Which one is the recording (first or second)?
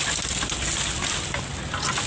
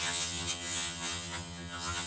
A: first